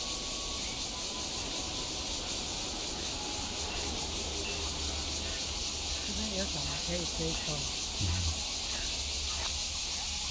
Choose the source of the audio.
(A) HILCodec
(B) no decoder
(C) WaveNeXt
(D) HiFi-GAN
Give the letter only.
B